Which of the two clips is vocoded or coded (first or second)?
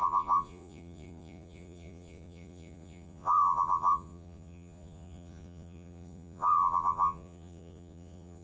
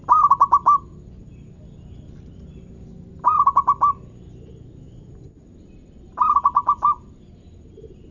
first